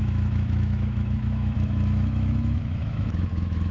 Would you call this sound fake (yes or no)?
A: yes